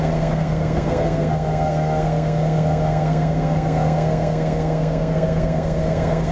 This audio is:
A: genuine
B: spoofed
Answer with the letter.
B